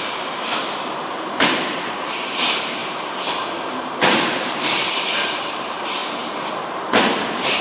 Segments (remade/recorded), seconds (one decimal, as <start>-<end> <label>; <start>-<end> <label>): 0.0-6.0 remade; 6.0-6.8 recorded; 6.8-7.6 remade